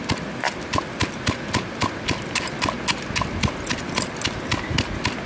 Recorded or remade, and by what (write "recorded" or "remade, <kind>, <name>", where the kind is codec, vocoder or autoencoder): recorded